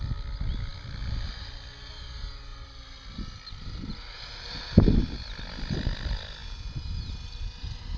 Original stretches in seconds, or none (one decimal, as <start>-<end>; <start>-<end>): 0.0-8.0